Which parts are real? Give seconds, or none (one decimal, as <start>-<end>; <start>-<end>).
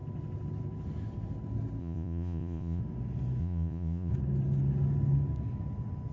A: 0.0-1.8; 2.8-3.4; 4.1-6.1